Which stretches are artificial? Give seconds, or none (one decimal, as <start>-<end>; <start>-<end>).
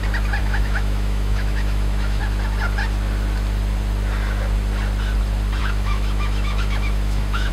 0.4-2.2; 5.6-7.5